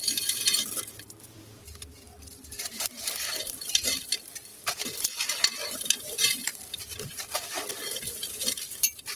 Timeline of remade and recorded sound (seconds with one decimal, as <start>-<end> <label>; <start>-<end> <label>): 0.0-9.2 remade